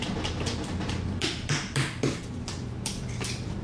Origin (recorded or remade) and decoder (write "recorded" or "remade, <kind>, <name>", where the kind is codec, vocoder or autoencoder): remade, vocoder, BigVGAN v2